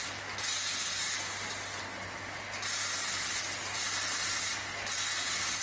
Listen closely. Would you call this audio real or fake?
real